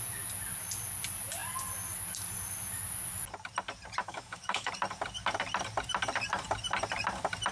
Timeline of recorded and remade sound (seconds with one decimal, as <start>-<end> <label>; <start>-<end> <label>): 0.0-4.0 recorded; 4.0-4.7 remade; 4.7-7.5 recorded